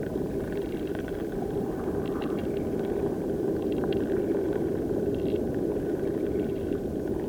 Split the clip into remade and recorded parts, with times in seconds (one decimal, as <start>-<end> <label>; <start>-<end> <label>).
0.0-2.4 remade; 2.4-3.0 recorded; 3.0-7.3 remade